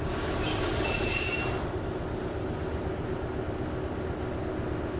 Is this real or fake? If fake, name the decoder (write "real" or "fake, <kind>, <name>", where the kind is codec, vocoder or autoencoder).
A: real